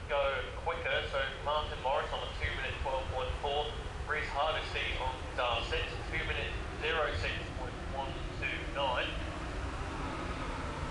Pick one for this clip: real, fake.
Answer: real